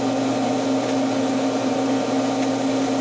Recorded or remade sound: recorded